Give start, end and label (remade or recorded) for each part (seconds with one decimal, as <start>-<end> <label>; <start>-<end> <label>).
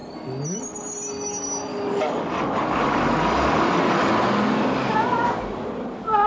0.0-1.7 recorded; 1.7-4.1 remade; 4.1-6.3 recorded